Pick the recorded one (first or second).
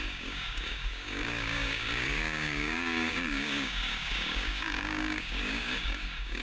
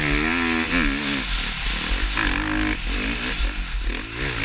second